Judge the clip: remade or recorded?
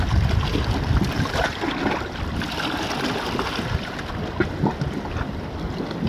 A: recorded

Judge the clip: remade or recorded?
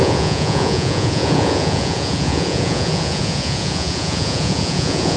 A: remade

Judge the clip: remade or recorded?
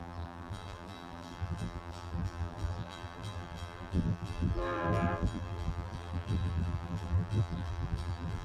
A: remade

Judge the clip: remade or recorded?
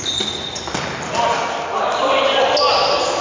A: recorded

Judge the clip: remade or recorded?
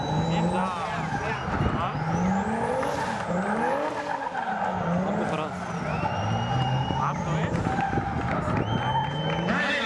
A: recorded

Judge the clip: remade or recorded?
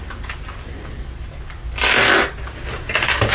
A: recorded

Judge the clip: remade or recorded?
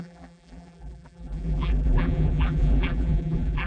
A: remade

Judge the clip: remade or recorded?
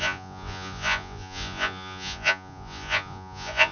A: remade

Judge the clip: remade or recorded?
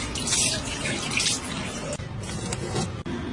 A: recorded